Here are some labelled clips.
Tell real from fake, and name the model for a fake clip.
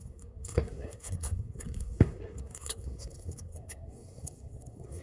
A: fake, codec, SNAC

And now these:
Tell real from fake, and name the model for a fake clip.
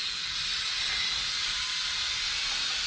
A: real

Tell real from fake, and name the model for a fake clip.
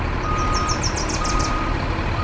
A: real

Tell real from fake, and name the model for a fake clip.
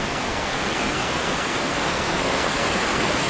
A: fake, codec, SNAC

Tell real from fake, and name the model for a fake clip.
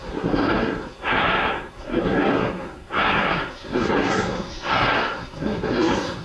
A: fake, codec, SNAC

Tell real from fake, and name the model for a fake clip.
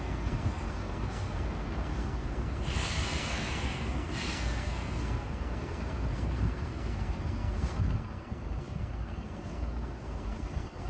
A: fake, codec, SNAC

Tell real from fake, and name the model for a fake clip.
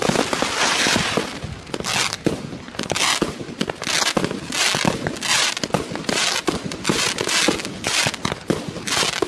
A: real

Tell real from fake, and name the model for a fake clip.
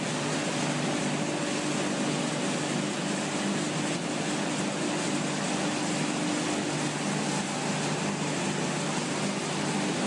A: real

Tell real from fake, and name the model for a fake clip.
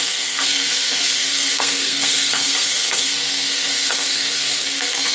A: fake, codec, SNAC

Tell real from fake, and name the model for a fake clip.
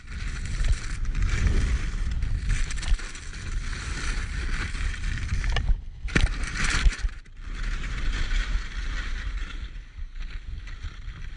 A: real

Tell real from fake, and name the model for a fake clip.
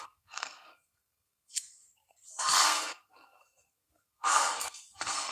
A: fake, codec, SNAC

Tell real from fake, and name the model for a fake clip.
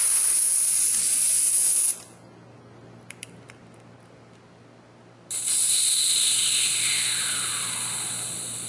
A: real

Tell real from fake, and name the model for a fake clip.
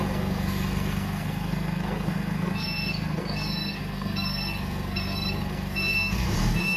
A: fake, codec, SNAC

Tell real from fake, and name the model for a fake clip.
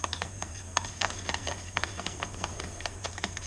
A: fake, codec, SNAC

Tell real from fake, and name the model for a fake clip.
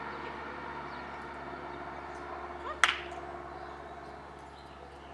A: real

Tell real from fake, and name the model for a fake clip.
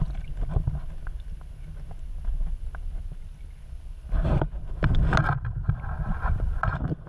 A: real